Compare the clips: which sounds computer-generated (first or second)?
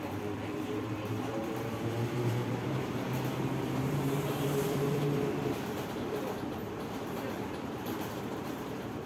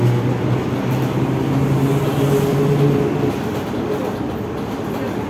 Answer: first